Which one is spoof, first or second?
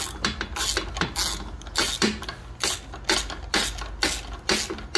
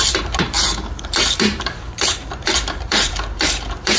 second